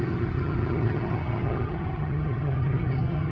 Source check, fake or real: fake